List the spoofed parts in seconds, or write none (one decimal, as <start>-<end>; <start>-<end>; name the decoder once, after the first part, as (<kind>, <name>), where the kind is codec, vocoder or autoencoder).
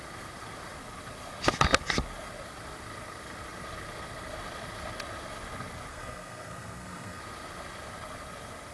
5.9-7.2 (codec, SNAC)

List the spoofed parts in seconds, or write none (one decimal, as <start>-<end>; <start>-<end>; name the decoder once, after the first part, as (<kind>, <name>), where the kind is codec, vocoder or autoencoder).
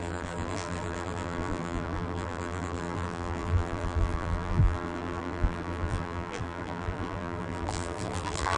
0.0-8.6 (vocoder, BigVGAN v2)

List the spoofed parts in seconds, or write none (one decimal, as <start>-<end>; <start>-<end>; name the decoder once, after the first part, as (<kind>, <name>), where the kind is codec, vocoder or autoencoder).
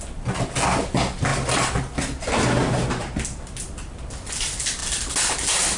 none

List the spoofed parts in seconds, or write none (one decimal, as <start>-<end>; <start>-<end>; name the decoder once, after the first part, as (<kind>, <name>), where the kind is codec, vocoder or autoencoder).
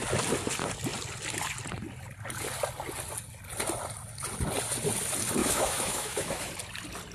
5.4-6.5 (autoencoder, DAC-VAE)